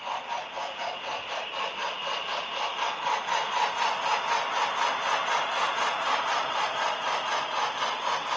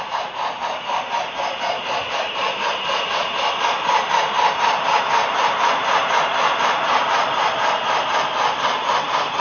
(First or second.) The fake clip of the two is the second